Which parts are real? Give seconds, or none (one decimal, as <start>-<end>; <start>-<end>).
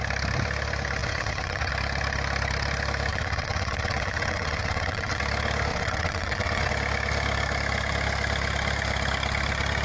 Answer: 0.0-1.0; 1.7-3.1; 5.2-5.7; 6.7-9.8